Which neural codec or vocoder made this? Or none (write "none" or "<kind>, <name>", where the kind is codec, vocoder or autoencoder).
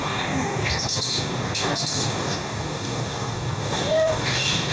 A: codec, DAC